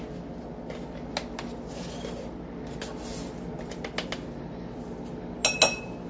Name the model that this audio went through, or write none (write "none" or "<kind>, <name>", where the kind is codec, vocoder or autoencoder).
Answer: none